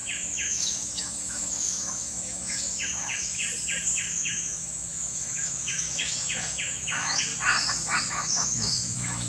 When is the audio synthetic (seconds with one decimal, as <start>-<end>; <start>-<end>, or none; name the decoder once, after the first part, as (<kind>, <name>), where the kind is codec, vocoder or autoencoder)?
0.0-3.4 (autoencoder, DAC-VAE); 4.0-7.3; 8.1-9.3